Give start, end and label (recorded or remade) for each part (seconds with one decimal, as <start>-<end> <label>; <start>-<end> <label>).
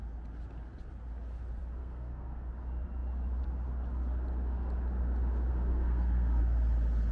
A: 0.0-1.8 recorded; 1.8-2.5 remade; 2.5-5.5 recorded; 5.5-6.4 remade; 6.4-7.1 recorded